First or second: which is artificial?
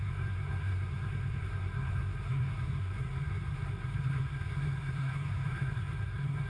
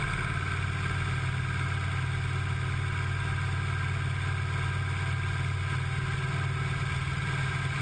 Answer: first